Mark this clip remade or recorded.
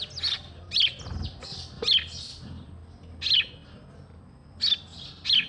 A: recorded